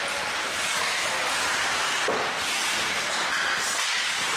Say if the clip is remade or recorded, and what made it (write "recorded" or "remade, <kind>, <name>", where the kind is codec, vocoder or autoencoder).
recorded